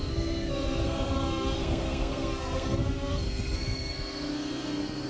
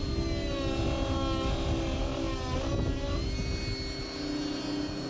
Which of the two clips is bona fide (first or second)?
second